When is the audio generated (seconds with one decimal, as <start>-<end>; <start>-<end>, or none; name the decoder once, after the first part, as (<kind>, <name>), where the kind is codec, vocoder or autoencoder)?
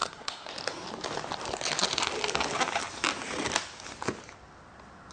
0.0-0.5 (codec, SNAC)